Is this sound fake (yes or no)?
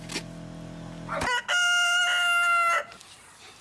no